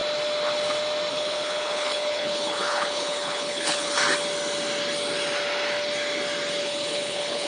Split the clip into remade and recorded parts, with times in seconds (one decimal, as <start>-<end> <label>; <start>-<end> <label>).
0.0-1.1 recorded; 1.1-4.0 remade; 4.0-6.6 recorded; 6.6-7.5 remade